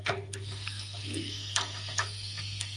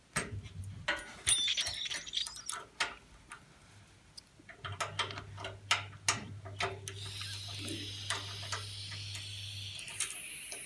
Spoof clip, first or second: first